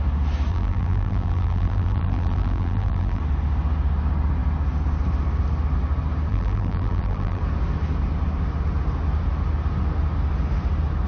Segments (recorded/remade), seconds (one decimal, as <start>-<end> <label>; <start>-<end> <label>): 0.0-0.5 recorded; 0.5-3.2 remade; 3.2-6.3 recorded; 6.3-7.4 remade; 7.4-11.1 recorded